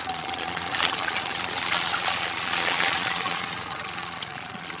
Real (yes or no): no